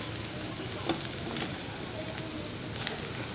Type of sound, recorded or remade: recorded